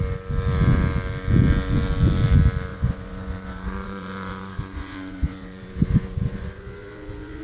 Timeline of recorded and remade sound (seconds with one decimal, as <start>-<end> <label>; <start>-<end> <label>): 0.0-2.7 recorded; 2.7-7.4 remade

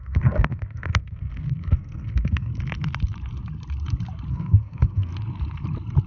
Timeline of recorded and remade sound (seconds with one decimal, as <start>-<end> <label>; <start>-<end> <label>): 0.0-2.5 remade; 2.5-4.3 recorded; 4.3-5.1 remade; 5.1-6.1 recorded

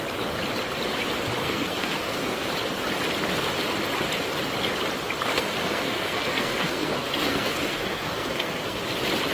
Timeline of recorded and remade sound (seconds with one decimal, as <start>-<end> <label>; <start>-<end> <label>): 0.0-1.4 recorded; 1.4-2.5 remade; 2.5-5.3 recorded; 5.3-8.8 remade; 8.8-9.3 recorded

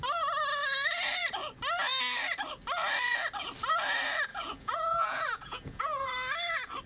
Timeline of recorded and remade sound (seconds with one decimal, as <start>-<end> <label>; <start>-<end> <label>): 0.0-4.3 recorded; 4.3-6.1 remade; 6.1-6.9 recorded

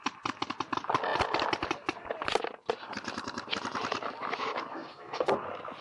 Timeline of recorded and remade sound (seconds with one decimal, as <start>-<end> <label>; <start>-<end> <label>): 0.0-4.7 recorded; 4.7-5.3 remade; 5.3-5.8 recorded